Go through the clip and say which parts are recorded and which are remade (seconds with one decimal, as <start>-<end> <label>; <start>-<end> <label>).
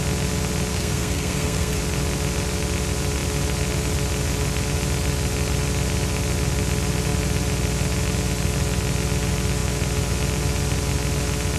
0.0-0.7 recorded; 0.7-1.8 remade; 1.8-11.6 recorded